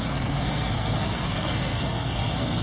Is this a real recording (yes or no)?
no